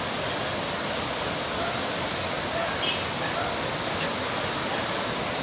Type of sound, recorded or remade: recorded